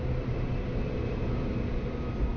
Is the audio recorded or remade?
recorded